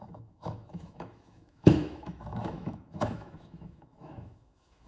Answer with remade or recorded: remade